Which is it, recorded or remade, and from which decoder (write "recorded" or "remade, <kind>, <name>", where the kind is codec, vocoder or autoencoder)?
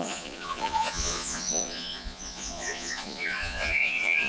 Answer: remade, vocoder, Vocos